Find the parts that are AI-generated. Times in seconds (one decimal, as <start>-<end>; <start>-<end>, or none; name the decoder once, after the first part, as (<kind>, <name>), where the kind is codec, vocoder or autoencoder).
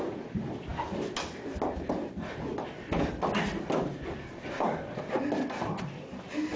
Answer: none